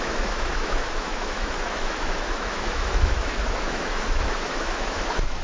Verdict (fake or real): fake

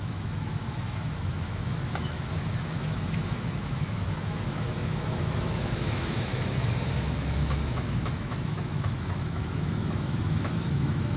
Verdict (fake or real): fake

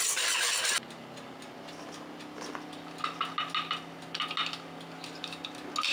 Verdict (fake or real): real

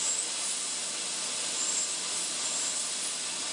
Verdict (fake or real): real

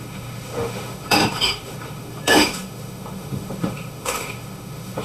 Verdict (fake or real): fake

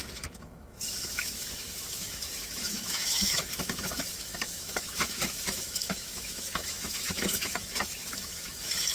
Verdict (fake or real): fake